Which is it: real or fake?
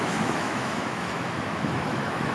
fake